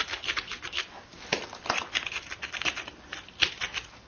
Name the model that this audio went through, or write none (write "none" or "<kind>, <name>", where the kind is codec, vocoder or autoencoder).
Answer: none